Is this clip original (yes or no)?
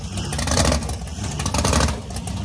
yes